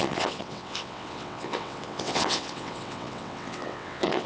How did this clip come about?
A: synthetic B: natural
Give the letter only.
A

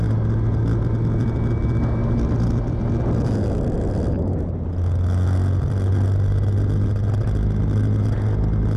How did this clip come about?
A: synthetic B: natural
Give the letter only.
B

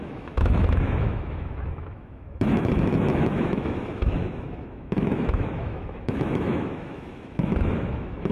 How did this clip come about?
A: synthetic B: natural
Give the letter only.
A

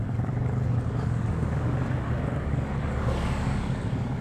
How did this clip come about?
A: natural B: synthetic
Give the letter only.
B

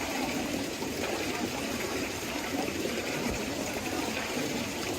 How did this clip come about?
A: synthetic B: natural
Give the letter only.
A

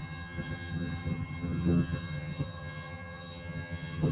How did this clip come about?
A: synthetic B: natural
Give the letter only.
A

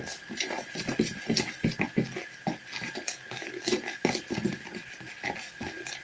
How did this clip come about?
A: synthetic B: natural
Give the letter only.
B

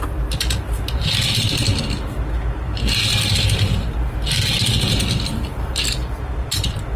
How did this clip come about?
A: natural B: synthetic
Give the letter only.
A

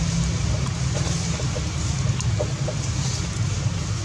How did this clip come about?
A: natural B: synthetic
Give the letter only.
A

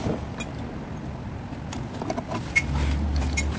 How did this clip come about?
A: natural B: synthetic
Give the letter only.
A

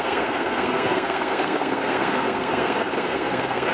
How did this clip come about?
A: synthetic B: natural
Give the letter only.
A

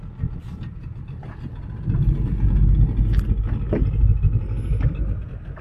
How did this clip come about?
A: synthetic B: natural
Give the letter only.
B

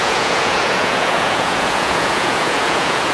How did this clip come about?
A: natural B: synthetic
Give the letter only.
B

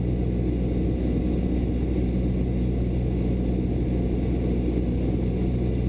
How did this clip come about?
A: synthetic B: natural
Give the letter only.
B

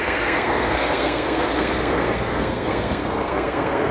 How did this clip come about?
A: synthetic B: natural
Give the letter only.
A